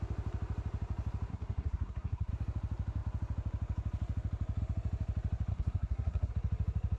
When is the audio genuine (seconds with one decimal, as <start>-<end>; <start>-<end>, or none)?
0.0-1.3; 2.3-5.5; 6.3-7.0